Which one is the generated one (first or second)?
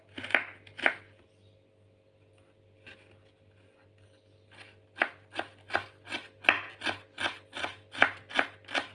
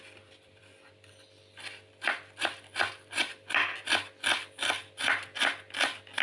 second